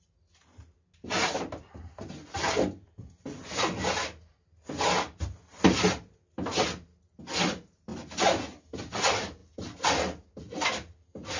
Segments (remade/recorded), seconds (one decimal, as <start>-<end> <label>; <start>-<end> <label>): 0.0-11.4 recorded